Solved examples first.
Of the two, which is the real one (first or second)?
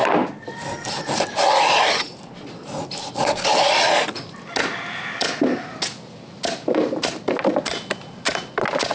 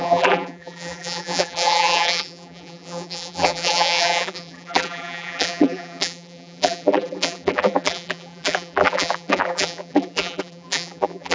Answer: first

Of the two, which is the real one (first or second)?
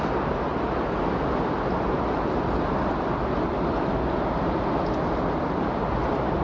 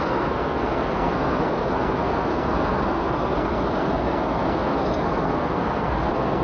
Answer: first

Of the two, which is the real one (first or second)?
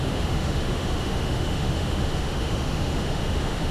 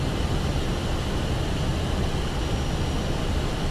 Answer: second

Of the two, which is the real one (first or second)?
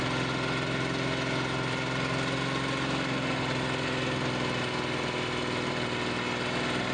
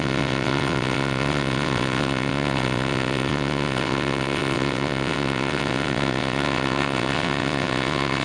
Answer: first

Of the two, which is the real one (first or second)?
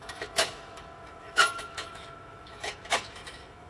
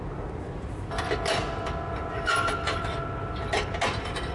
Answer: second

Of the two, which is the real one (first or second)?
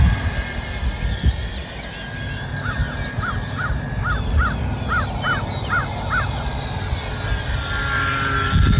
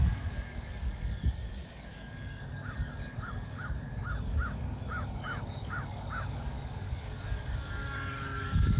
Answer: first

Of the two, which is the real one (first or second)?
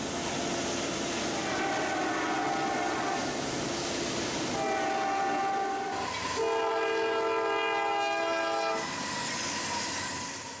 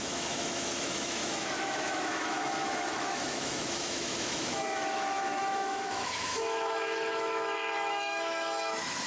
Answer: first